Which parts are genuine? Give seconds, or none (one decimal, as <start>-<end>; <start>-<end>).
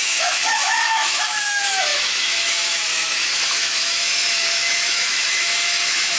none